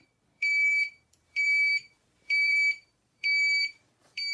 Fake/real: fake